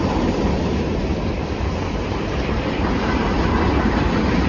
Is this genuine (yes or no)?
no